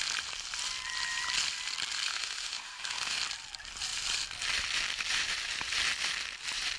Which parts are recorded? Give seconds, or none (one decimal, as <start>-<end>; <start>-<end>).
0.0-2.1; 3.2-6.8